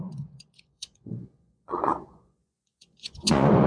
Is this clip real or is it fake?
fake